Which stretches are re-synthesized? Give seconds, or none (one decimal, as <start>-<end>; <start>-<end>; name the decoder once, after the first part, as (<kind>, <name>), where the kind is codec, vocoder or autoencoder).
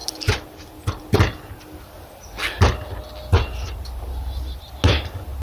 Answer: 0.0-1.0 (vocoder, BigVGAN v2); 3.3-4.6